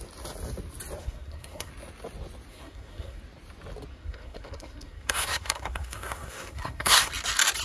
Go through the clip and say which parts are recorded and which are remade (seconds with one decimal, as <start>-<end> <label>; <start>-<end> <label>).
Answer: 0.0-1.0 recorded; 1.0-1.7 remade; 1.7-2.5 recorded; 2.5-3.2 remade; 3.2-3.9 recorded; 3.9-7.1 remade; 7.1-7.6 recorded

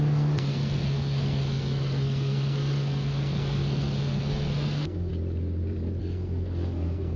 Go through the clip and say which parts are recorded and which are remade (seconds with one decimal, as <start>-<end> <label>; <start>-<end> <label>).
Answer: 0.0-5.1 remade; 5.1-6.0 recorded; 6.0-7.2 remade

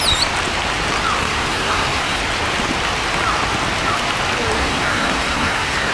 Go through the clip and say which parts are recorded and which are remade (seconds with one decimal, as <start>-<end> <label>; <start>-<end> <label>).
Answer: 0.0-1.2 recorded; 1.2-2.2 remade; 2.2-4.6 recorded; 4.6-5.9 remade

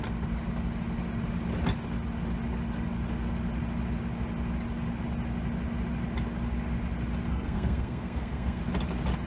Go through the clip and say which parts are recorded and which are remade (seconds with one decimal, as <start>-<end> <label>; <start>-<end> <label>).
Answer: 0.0-7.3 recorded; 7.3-8.6 remade; 8.6-9.3 recorded